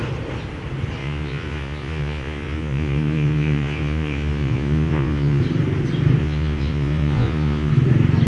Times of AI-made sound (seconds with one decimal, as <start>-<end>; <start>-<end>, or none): 1.0-5.4; 6.2-7.7